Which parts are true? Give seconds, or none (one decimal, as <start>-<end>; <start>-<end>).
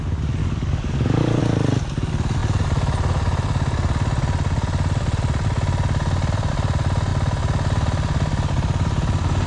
0.0-0.4; 1.4-9.5